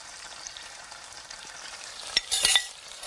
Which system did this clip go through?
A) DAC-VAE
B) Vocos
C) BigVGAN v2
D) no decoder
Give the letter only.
C